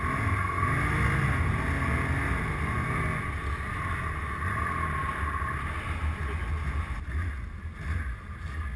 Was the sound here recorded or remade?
recorded